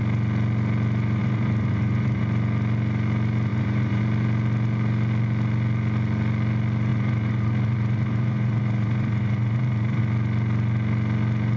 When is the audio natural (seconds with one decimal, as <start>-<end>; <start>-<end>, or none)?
0.0-1.2; 2.2-3.5; 4.0-6.9; 10.0-11.6